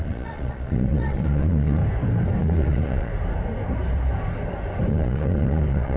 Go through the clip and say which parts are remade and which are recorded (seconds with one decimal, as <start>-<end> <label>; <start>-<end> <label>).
0.0-1.8 remade; 1.8-2.4 recorded; 2.4-3.1 remade; 3.1-4.9 recorded; 4.9-6.0 remade